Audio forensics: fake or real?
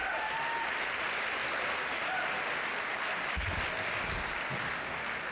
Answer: real